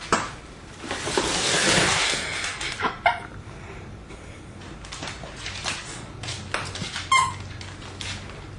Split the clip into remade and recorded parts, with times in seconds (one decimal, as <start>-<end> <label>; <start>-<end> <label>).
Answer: 0.0-4.3 remade; 4.3-6.8 recorded; 6.8-7.3 remade; 7.3-8.6 recorded